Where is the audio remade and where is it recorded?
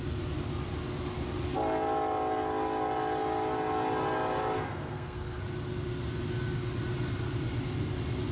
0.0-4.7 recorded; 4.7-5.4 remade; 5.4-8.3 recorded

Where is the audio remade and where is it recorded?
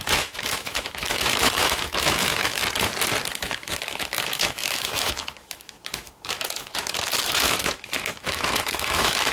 0.0-2.6 remade; 2.6-3.4 recorded; 3.4-9.3 remade